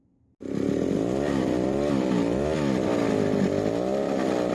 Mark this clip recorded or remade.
recorded